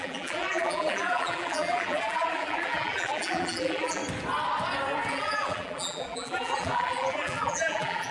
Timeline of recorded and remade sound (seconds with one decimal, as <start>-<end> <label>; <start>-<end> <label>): 0.0-4.0 remade; 4.0-5.1 recorded; 5.1-8.1 remade